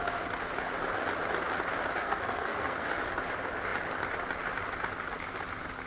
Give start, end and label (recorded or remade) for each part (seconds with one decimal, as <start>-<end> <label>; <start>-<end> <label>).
0.0-2.0 recorded; 2.0-2.9 remade; 2.9-5.9 recorded